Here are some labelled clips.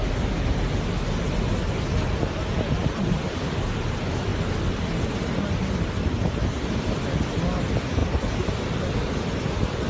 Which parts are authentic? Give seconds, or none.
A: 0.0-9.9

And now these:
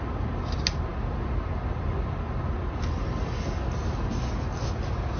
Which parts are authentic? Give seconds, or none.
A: 0.0-5.2